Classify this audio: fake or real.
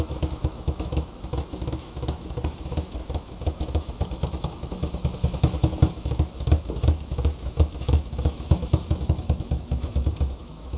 fake